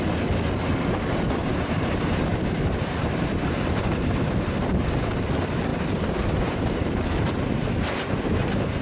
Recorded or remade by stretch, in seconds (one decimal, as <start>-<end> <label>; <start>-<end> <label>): 0.0-1.4 recorded; 1.4-5.1 remade; 5.1-5.7 recorded; 5.7-8.8 remade